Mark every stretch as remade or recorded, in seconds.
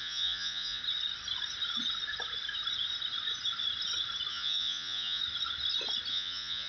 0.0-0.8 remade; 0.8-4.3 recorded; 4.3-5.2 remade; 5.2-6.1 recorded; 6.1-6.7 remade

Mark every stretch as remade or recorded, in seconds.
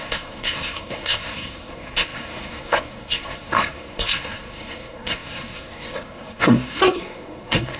0.0-7.8 remade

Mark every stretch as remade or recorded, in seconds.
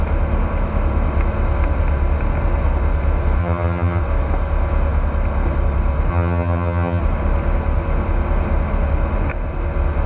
0.0-3.4 recorded; 3.4-4.0 remade; 4.0-6.1 recorded; 6.1-7.0 remade; 7.0-10.1 recorded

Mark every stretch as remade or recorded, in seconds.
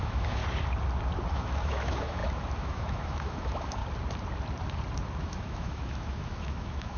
0.0-0.4 remade; 0.4-1.3 recorded; 1.3-3.8 remade; 3.8-5.2 recorded; 5.2-7.0 remade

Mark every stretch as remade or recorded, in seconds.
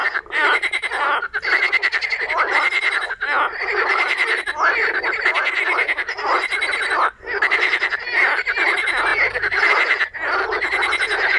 0.0-11.4 recorded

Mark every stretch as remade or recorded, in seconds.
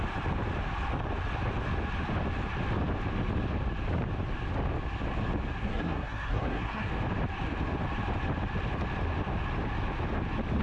0.0-5.6 recorded; 5.6-6.9 remade; 6.9-10.6 recorded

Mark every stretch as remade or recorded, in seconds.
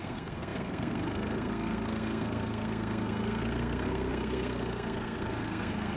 0.0-6.0 remade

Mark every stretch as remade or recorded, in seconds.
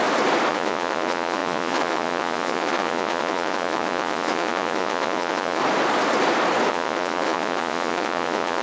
0.0-0.5 recorded; 0.5-5.6 remade; 5.6-6.7 recorded; 6.7-8.6 remade